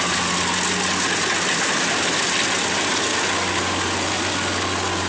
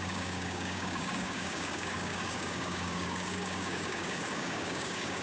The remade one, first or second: second